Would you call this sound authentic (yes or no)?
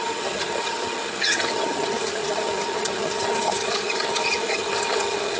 no